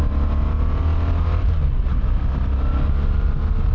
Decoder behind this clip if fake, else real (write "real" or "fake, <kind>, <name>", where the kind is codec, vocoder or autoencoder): real